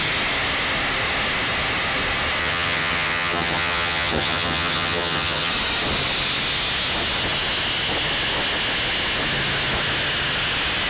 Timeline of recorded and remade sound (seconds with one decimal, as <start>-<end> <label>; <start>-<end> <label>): 0.0-2.4 recorded; 2.4-5.5 remade; 5.5-10.9 recorded